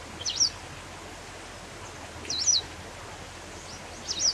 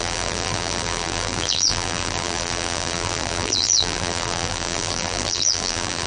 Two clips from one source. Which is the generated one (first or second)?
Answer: second